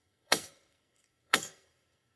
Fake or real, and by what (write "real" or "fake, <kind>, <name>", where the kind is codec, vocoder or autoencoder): fake, codec, SNAC